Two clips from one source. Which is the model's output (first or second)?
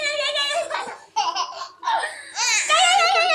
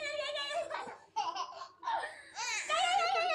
second